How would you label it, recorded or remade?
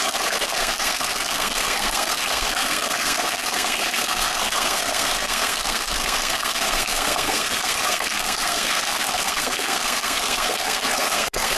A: remade